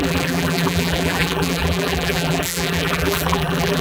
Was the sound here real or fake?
fake